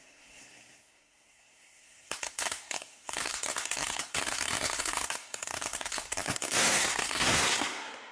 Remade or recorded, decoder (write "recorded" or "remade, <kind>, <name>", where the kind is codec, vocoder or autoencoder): remade, codec, SNAC